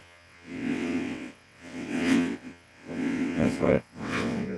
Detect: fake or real fake